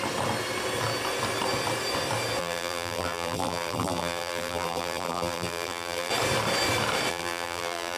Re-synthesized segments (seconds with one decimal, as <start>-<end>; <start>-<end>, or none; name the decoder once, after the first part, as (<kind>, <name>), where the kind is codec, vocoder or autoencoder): 2.4-6.1 (vocoder, BigVGAN v2); 7.1-8.0